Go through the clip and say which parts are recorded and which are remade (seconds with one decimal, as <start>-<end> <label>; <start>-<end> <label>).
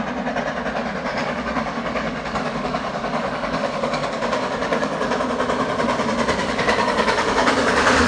0.0-1.1 recorded; 1.1-5.2 remade; 5.2-6.4 recorded; 6.4-8.1 remade